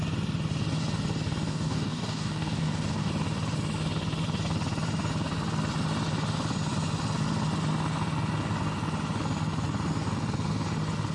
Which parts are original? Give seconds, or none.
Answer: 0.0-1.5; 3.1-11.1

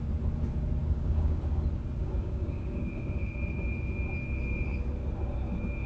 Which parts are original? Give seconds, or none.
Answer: 0.0-0.8; 1.4-2.0; 2.9-5.9

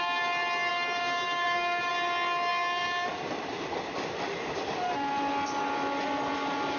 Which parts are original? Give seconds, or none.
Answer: 0.0-0.7; 1.9-6.8

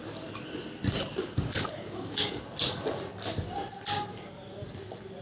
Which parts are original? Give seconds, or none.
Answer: 0.0-1.2; 2.3-5.2